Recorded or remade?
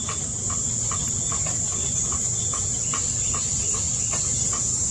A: recorded